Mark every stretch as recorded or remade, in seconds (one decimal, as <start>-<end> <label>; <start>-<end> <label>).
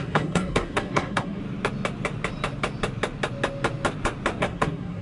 0.0-1.4 remade; 1.4-4.4 recorded; 4.4-5.0 remade